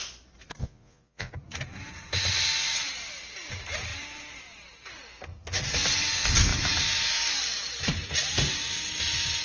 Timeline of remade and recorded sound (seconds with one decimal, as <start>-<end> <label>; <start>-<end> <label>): 0.0-0.6 recorded; 0.6-1.3 remade; 1.3-9.4 recorded